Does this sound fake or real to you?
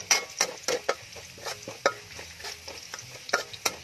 real